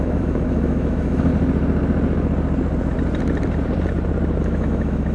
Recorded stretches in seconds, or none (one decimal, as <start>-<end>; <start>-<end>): 1.3-4.4